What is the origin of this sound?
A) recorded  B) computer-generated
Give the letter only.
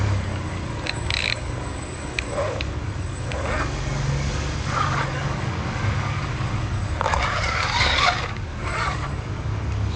B